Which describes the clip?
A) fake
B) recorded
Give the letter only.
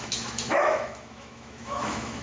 A